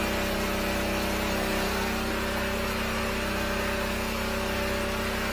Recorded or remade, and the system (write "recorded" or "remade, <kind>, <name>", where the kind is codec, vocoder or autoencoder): recorded